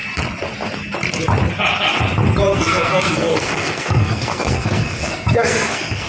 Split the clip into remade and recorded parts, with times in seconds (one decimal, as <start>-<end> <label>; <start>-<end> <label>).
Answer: 0.0-2.5 recorded; 2.5-6.1 remade